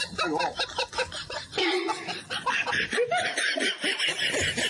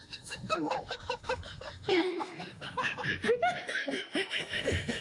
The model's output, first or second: second